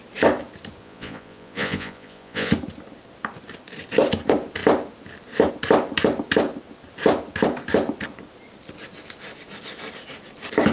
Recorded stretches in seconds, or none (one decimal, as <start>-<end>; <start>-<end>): 0.0-0.8; 2.5-10.7